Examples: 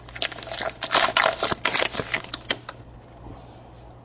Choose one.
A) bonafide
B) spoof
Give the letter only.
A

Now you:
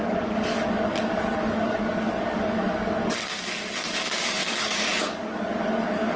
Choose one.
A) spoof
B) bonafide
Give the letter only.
A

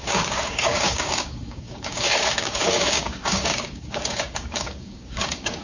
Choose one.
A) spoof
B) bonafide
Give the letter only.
A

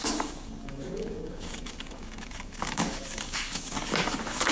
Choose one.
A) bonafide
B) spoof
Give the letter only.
B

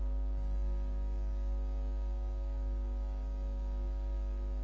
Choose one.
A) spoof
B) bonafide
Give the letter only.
A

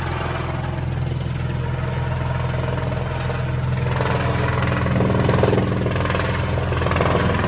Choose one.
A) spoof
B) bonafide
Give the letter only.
B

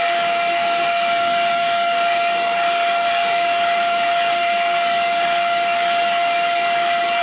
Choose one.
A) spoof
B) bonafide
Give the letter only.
A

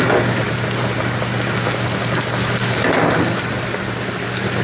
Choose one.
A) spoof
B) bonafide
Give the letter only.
B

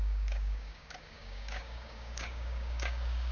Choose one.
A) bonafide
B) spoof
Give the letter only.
B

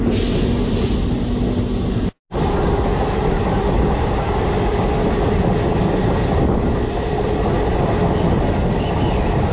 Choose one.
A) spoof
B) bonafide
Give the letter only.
B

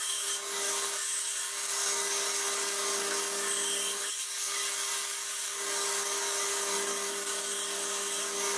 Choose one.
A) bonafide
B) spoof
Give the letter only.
B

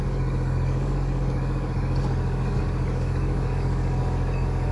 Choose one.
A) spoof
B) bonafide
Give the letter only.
A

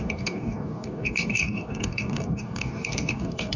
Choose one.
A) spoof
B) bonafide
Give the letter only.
A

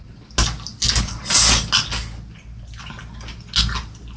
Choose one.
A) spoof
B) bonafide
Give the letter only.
B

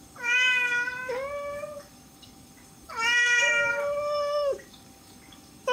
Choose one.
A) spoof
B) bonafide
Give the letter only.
A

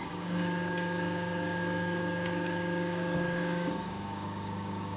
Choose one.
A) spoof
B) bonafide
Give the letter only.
A